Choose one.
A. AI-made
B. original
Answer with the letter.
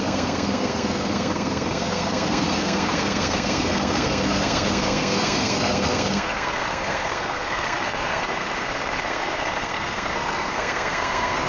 A